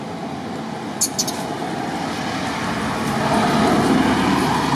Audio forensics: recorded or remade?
recorded